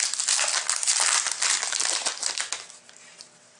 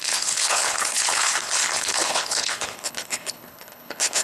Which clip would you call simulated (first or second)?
second